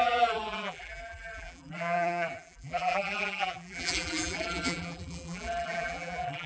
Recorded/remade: remade